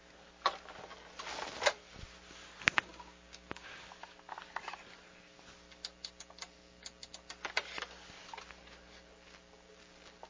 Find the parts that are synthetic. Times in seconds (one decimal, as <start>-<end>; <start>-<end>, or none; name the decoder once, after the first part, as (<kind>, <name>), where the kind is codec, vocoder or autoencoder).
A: 2.7-3.9 (codec, DAC)

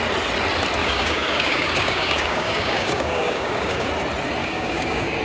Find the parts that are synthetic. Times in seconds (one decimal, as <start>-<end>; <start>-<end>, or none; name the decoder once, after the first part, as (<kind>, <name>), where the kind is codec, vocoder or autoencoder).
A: 0.8-3.9 (codec, DAC); 4.4-5.2

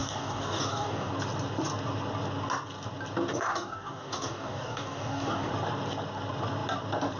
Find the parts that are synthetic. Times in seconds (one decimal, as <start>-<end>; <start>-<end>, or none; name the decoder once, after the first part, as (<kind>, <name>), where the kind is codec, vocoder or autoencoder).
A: 0.0-1.1 (codec, DAC); 3.3-5.5

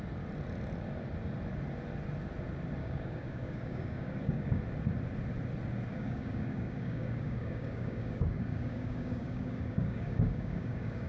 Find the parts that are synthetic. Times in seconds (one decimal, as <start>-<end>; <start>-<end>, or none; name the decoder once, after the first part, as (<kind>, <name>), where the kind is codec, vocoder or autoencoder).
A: 2.8-4.6 (codec, DAC); 5.9-11.1

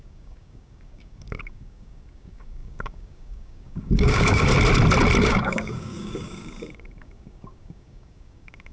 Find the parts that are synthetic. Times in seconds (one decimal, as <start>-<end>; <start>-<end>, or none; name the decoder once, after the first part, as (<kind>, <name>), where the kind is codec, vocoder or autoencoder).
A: 0.0-4.5 (codec, DAC); 5.2-8.7